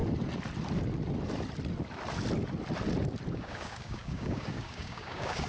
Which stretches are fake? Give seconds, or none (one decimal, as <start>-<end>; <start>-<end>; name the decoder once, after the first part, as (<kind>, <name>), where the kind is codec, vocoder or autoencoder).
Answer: 3.3-5.5 (codec, DAC)